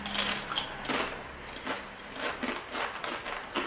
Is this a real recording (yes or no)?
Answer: yes